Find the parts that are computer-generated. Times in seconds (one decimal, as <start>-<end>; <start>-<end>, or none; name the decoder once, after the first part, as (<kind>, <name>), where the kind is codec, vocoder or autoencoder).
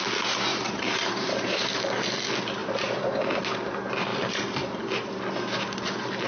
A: 0.5-1.7 (vocoder, BigVGAN v2); 2.6-3.4; 4.1-5.2